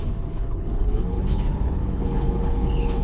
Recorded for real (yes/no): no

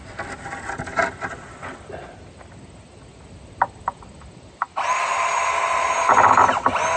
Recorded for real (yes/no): yes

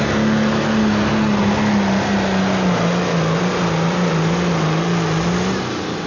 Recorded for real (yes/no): yes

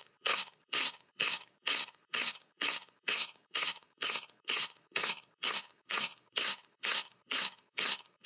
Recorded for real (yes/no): no